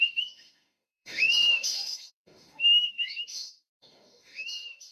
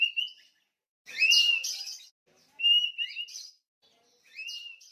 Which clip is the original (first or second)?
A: second